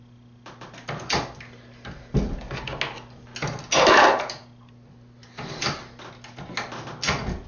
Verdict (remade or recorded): recorded